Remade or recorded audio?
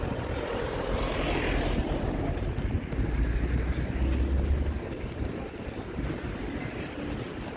recorded